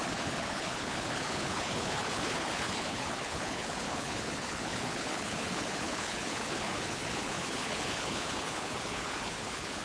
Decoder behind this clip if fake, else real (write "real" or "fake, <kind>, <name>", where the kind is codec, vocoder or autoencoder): fake, codec, HILCodec